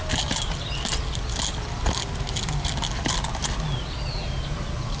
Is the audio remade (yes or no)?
no